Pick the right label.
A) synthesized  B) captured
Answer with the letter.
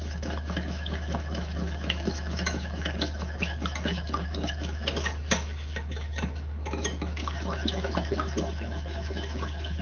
A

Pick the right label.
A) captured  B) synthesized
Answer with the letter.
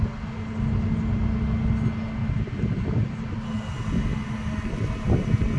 A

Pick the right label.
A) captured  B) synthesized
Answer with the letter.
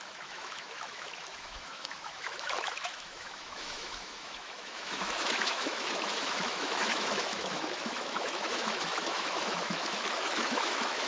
B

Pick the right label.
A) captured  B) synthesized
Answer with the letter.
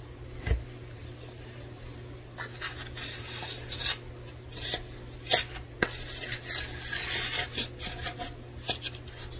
A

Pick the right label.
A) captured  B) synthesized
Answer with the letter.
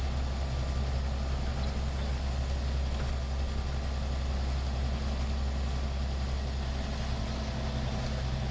A